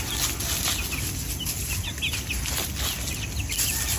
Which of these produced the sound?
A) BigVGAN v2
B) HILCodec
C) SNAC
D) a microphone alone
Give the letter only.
D